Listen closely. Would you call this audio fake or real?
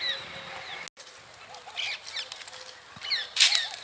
real